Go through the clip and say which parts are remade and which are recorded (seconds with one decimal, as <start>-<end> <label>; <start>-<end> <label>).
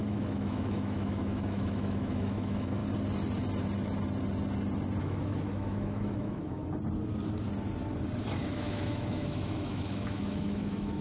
0.0-2.8 remade; 2.8-5.0 recorded; 5.0-6.6 remade; 6.6-8.5 recorded; 8.5-11.0 remade